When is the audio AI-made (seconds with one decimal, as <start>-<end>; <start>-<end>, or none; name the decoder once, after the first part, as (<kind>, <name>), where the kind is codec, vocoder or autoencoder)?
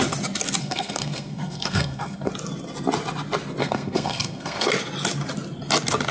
0.6-2.3 (codec, SNAC); 3.6-4.7